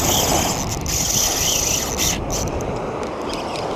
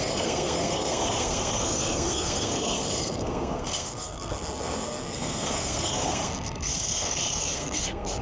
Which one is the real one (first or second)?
first